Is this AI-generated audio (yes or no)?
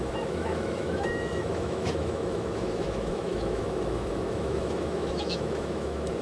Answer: yes